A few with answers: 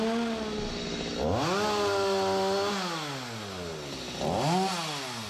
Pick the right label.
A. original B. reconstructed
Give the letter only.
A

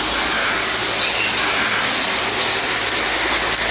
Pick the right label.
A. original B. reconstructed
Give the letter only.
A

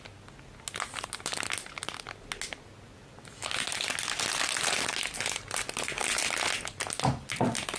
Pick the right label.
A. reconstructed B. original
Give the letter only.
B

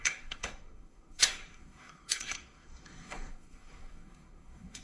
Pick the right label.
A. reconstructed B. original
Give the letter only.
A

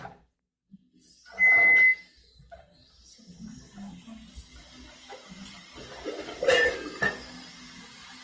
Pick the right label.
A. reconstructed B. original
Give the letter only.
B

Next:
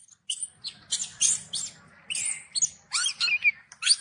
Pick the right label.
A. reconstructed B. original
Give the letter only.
B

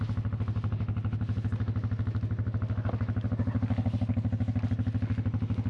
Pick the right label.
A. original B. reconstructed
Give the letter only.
A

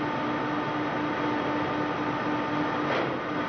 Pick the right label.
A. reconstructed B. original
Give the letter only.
B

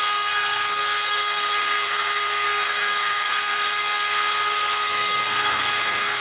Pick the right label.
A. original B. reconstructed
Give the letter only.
B